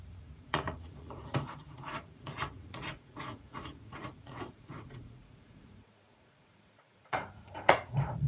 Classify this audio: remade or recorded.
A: remade